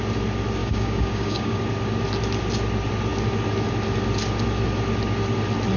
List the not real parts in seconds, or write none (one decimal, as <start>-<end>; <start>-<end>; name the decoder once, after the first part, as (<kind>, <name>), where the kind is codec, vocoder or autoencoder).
0.6-1.6 (codec, DAC)